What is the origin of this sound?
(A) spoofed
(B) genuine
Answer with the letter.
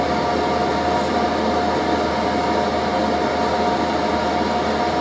B